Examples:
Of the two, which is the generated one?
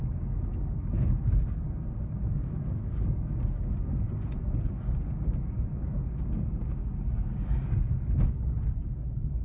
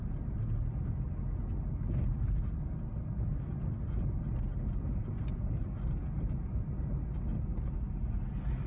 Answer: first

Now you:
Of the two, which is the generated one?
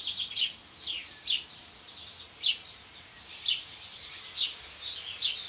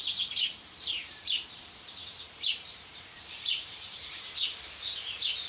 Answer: second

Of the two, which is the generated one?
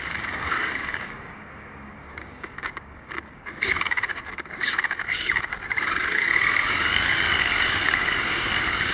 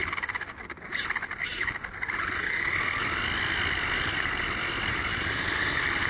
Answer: first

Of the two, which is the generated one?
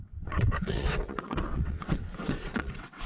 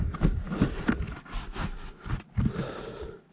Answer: first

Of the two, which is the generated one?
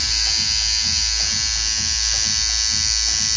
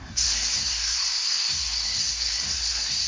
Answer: second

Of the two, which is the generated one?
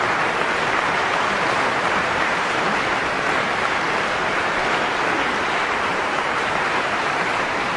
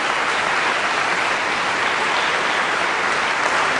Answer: first